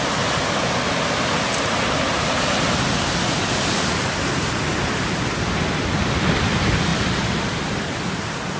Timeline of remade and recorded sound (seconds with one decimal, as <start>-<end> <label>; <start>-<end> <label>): 0.0-8.6 recorded